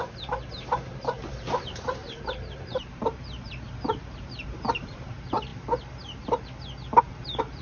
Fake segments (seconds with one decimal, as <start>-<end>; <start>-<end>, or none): 0.0-5.5; 7.0-7.6